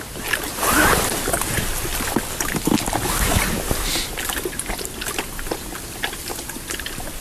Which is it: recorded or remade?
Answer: recorded